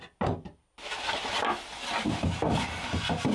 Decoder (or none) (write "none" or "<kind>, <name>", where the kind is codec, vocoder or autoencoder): none